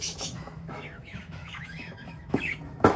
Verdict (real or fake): fake